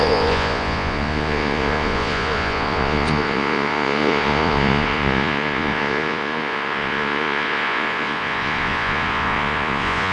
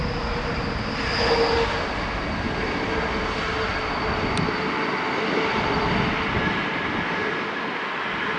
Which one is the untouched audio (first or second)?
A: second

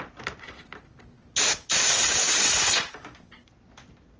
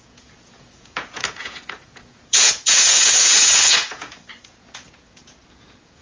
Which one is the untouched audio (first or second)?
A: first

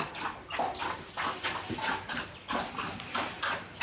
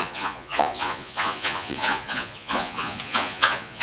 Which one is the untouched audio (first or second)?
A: first